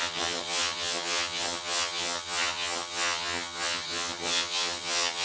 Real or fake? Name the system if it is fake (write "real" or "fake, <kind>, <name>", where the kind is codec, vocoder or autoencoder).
fake, vocoder, HiFi-GAN